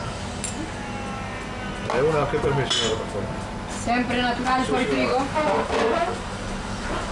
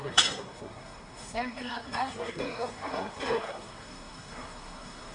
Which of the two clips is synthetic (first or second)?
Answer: second